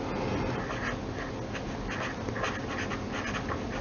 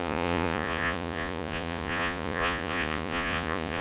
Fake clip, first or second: second